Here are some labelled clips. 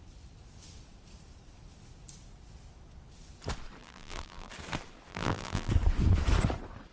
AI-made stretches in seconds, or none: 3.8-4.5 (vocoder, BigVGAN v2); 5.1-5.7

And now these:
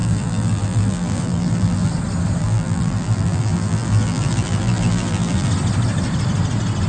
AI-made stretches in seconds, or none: 0.0-1.9 (vocoder, BigVGAN v2); 2.4-5.5

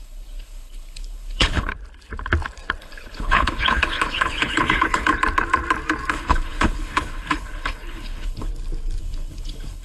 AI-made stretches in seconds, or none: 0.0-1.7 (codec, HILCodec); 2.8-5.1; 6.1-8.5; 9.0-9.8